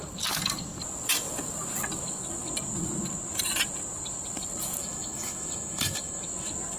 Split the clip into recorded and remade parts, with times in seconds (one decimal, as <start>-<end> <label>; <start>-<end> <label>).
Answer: 0.0-4.8 recorded; 4.8-6.2 remade; 6.2-6.8 recorded